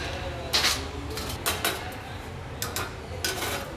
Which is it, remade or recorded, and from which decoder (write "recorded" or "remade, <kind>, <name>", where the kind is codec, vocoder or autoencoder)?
recorded